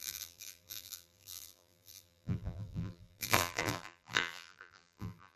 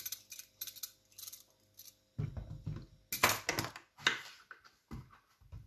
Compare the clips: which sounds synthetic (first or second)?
first